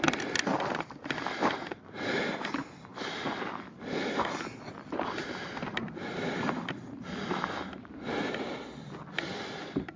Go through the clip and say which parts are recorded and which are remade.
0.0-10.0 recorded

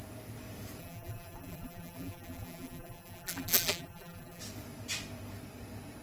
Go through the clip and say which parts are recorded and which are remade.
0.0-0.8 recorded; 0.8-4.4 remade; 4.4-6.0 recorded

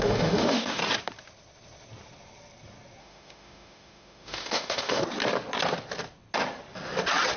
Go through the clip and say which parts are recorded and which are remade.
0.0-0.8 remade; 0.8-3.0 recorded; 3.0-5.0 remade; 5.0-7.4 recorded

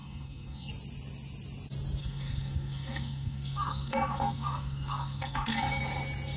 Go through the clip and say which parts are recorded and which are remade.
0.0-0.7 remade; 0.7-2.0 recorded; 2.0-5.8 remade; 5.8-6.4 recorded

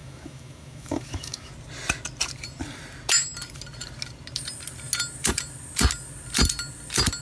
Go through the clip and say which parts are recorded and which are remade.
0.0-1.5 remade; 1.5-7.2 recorded